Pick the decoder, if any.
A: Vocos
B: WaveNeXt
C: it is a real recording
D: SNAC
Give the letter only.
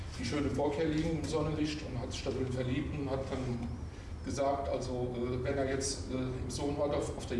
C